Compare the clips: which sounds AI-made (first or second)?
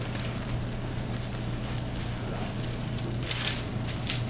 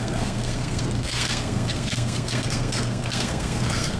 second